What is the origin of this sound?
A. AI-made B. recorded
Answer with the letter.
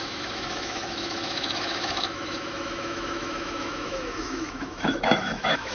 A